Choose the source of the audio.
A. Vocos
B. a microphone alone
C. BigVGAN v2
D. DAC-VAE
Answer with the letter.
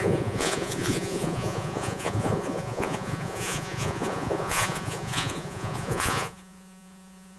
A